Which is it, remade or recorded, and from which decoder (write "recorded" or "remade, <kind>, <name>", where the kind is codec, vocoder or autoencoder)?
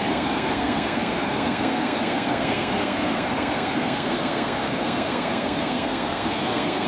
remade, codec, SNAC